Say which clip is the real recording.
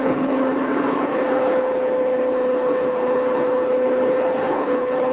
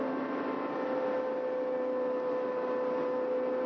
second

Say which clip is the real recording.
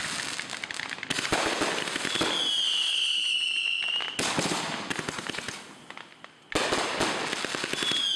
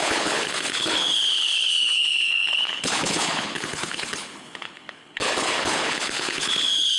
first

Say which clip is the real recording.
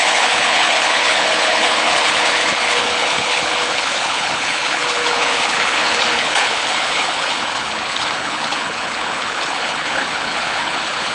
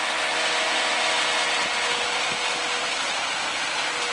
second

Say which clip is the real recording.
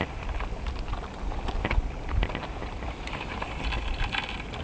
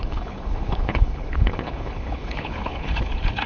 first